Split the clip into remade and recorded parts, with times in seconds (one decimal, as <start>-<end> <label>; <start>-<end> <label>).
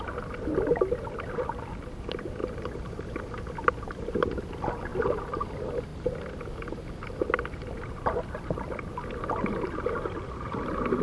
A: 0.0-4.9 recorded; 4.9-5.4 remade; 5.4-5.9 recorded; 5.9-11.0 remade